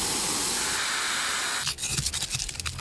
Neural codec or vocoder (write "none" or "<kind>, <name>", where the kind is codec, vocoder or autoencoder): none